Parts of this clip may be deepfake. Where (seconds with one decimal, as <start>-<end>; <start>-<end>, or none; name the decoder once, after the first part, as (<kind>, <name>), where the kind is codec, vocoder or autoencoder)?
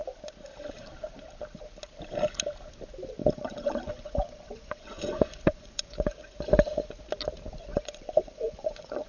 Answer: 3.2-7.0 (vocoder, Vocos); 7.7-9.1